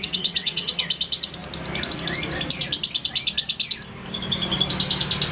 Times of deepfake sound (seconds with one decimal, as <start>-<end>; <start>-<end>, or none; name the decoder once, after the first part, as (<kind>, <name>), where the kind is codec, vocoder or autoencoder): 0.0-0.7 (vocoder, WaveNeXt)

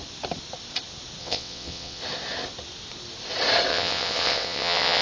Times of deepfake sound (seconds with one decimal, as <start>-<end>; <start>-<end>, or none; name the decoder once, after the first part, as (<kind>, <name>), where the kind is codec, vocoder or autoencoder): 1.2-2.0 (vocoder, WaveNeXt); 3.7-5.0

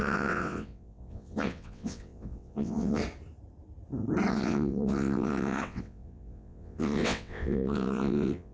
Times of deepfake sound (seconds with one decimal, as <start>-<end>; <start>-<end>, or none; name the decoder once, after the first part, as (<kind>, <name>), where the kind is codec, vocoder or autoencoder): 0.0-3.0 (vocoder, WaveNeXt); 4.3-8.5

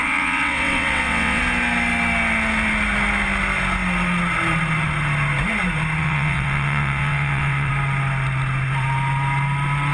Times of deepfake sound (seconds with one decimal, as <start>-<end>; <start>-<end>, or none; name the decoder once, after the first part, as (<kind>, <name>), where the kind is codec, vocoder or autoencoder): 0.0-1.4 (vocoder, WaveNeXt); 6.0-7.7

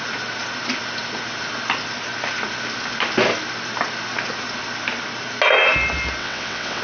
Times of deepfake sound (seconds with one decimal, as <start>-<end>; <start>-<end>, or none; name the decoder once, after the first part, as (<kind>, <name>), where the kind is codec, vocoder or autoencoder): 6.2-6.8 (vocoder, WaveNeXt)

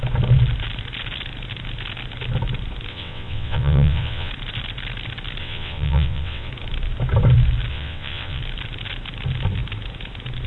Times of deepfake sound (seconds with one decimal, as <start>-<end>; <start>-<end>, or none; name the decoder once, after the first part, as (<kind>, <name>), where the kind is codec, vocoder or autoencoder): 2.9-4.3 (vocoder, WaveNeXt); 5.4-6.5; 7.7-8.4